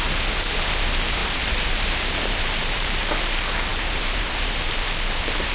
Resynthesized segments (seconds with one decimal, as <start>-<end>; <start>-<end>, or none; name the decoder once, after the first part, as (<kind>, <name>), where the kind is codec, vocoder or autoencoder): 1.2-3.1 (vocoder, BigVGAN v2); 3.7-5.5